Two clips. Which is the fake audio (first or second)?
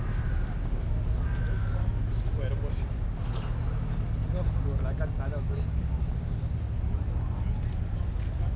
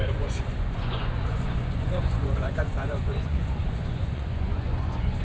second